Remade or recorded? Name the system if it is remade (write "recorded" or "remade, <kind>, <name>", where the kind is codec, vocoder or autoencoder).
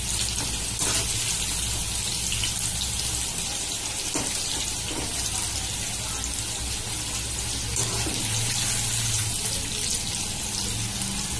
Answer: recorded